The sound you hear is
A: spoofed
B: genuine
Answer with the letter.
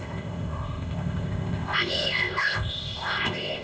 A